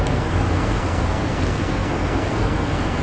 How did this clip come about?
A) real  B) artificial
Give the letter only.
B